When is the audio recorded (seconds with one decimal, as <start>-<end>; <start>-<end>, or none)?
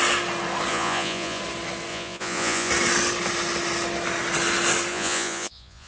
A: 0.0-0.7; 1.4-1.9; 2.7-4.9